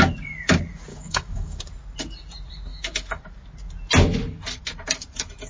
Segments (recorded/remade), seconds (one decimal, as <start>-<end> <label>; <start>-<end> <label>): 0.0-0.9 recorded; 0.9-1.6 remade; 1.6-2.7 recorded; 2.7-3.2 remade; 3.2-5.5 recorded